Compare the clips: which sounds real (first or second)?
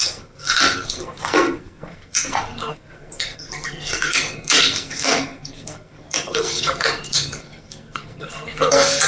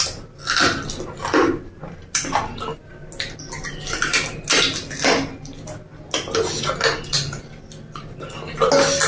second